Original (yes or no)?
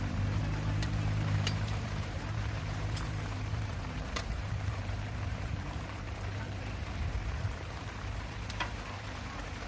no